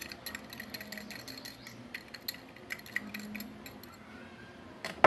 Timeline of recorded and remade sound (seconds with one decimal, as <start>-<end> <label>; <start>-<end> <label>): 0.0-5.1 recorded